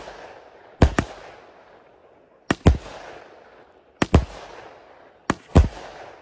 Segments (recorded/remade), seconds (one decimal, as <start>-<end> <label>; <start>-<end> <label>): 0.0-6.2 recorded